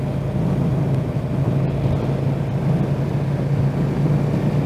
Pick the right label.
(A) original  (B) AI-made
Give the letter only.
A